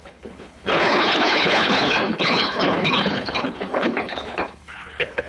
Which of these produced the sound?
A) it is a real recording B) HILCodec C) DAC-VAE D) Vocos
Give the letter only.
B